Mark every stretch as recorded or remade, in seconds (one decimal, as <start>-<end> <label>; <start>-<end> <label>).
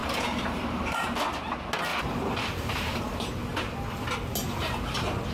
0.0-1.2 remade; 1.2-1.9 recorded; 1.9-3.0 remade; 3.0-5.3 recorded